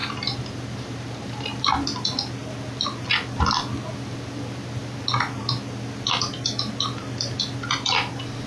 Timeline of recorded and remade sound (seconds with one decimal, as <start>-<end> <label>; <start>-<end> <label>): 0.0-1.6 remade; 1.6-8.5 recorded